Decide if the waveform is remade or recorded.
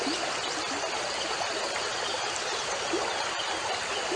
recorded